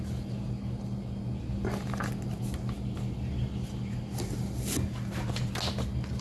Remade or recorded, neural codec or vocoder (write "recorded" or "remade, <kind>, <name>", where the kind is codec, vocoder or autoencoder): recorded